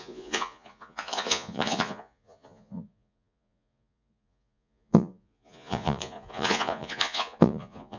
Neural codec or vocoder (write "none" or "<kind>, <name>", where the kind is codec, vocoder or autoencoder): vocoder, Vocos